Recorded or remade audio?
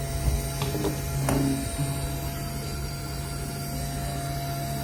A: recorded